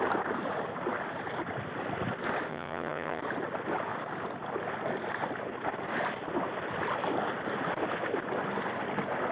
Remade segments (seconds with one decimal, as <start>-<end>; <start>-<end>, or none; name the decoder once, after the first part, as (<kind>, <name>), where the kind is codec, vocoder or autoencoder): 2.5-3.2 (vocoder, HiFi-GAN)